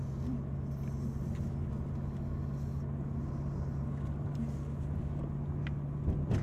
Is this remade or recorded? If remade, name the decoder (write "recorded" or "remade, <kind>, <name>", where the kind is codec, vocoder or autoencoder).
recorded